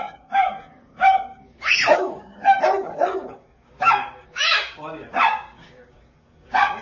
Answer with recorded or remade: remade